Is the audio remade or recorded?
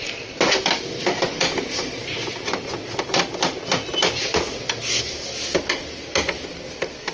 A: recorded